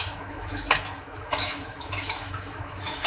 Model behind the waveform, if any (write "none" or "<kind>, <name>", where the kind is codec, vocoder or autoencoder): autoencoder, DAC-VAE